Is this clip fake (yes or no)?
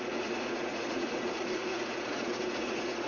yes